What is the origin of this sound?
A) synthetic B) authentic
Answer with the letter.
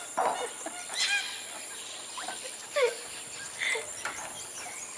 B